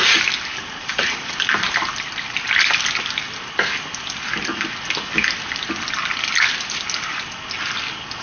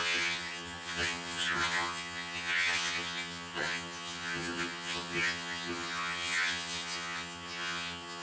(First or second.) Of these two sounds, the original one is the first